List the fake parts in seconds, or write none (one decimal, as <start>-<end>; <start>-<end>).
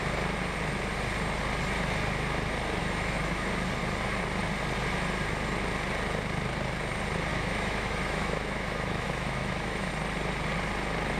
2.8-3.5; 7.3-9.9